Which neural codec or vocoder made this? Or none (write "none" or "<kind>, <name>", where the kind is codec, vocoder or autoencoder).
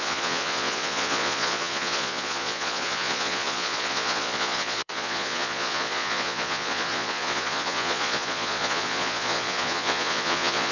vocoder, Vocos